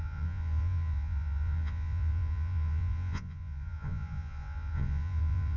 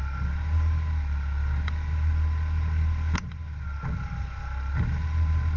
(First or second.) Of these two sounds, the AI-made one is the first